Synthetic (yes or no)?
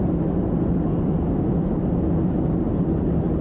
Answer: no